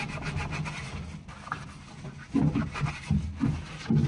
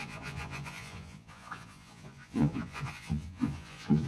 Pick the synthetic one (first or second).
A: second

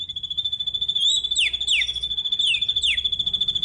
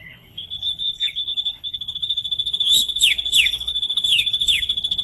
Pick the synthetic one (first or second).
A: second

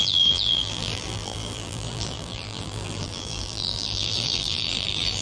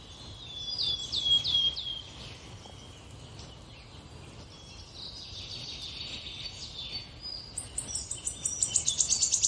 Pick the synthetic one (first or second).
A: first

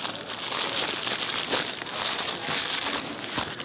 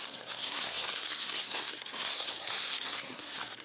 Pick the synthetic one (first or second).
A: second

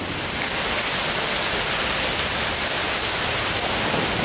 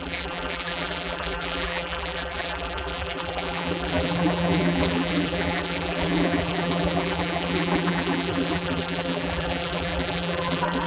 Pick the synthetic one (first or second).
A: second